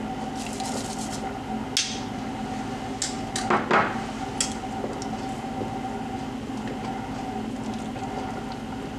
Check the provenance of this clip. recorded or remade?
recorded